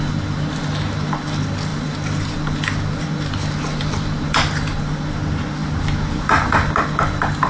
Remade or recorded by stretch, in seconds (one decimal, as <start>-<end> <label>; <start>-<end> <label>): 0.0-7.5 recorded